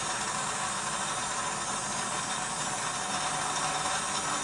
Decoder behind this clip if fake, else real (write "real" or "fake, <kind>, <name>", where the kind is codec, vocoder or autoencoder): real